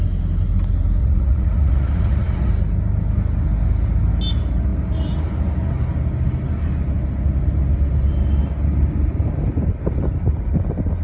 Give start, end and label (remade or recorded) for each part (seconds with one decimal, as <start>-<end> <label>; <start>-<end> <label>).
0.0-1.0 recorded; 1.0-2.5 remade; 2.5-11.0 recorded